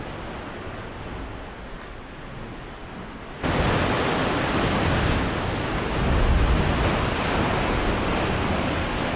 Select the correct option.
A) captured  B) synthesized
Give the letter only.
A